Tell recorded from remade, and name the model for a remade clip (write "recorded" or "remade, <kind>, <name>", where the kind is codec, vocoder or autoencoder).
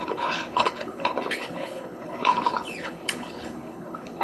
remade, codec, HILCodec